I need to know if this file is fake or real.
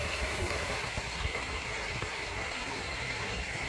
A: fake